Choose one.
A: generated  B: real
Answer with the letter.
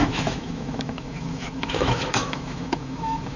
A